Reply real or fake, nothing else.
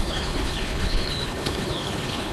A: fake